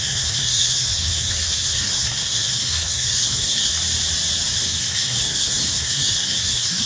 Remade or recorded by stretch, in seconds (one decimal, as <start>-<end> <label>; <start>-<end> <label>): 0.0-3.7 remade; 3.7-4.5 recorded; 4.5-6.9 remade